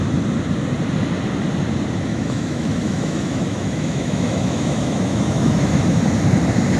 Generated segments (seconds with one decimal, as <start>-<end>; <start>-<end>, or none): 2.1-6.0